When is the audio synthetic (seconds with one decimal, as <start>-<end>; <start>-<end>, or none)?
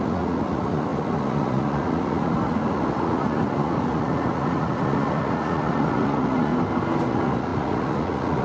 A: 0.0-6.5; 7.1-8.4